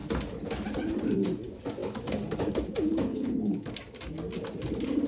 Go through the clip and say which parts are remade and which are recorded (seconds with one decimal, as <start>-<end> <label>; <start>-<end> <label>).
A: 0.0-3.1 recorded; 3.1-3.7 remade; 3.7-5.1 recorded